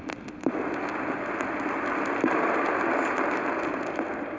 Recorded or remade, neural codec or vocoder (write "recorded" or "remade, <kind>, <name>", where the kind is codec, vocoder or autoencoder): recorded